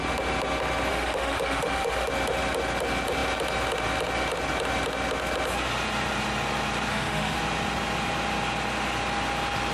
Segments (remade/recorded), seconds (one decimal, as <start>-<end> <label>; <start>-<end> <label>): 0.0-0.9 recorded; 0.9-2.1 remade; 2.1-6.9 recorded; 6.9-7.4 remade; 7.4-9.7 recorded